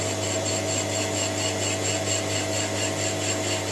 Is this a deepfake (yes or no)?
no